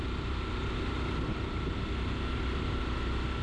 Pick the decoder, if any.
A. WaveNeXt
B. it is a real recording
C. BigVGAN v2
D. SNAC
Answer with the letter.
B